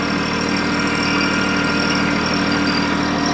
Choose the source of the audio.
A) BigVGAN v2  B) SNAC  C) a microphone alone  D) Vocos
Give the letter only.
C